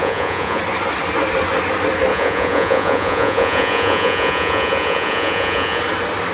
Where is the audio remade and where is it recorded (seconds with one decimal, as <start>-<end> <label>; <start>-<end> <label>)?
0.0-0.6 remade; 0.6-2.1 recorded; 2.1-5.8 remade; 5.8-6.3 recorded